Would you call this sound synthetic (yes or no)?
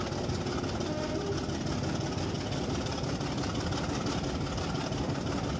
no